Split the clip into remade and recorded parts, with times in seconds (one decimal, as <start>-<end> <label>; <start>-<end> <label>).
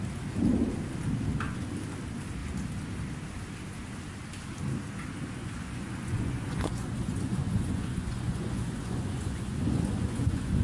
0.0-5.4 recorded; 5.4-10.6 remade